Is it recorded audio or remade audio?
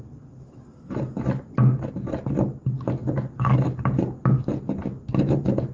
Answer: recorded